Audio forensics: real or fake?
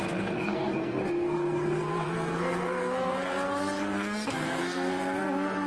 fake